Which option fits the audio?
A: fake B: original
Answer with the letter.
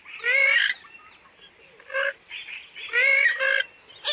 B